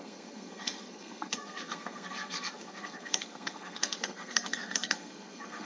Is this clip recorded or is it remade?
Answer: remade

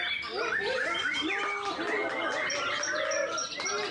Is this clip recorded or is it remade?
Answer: recorded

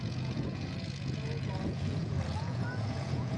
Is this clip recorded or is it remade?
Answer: remade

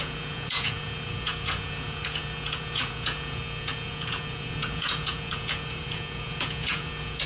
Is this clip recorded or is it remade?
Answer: remade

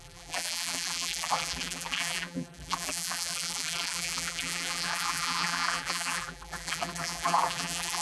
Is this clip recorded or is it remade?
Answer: remade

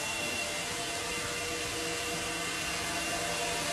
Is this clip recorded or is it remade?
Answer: recorded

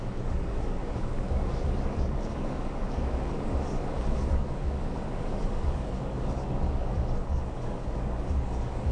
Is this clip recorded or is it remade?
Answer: remade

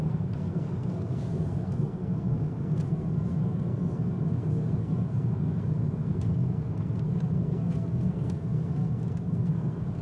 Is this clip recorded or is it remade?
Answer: remade